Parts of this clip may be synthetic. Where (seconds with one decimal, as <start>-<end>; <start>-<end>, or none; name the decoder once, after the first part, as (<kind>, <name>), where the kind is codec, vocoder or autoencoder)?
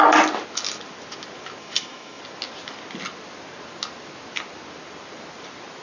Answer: 1.6-2.2 (autoencoder, DAC-VAE)